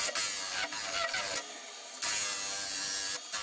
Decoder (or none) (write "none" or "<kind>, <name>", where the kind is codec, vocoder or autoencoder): none